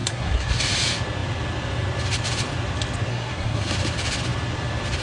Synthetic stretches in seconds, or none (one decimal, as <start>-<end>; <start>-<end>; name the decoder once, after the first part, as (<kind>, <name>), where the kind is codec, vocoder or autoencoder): 0.0-0.6 (codec, SNAC); 3.1-3.7